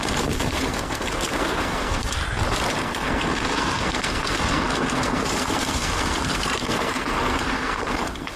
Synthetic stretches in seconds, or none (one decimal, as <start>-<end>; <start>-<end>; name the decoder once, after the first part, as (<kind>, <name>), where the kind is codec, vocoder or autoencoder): 0.0-2.2 (codec, SNAC); 2.8-8.4